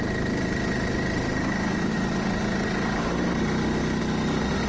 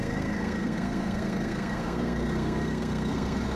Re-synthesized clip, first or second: second